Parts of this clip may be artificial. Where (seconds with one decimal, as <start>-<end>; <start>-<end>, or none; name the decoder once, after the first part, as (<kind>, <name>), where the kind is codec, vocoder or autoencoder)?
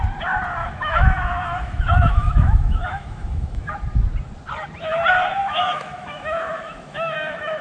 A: 0.6-3.7 (autoencoder, DAC-VAE); 5.4-7.6